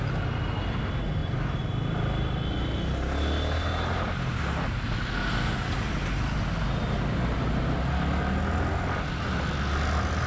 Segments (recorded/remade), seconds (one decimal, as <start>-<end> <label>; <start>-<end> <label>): 0.0-10.3 recorded